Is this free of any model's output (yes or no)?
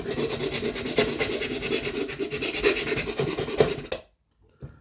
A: yes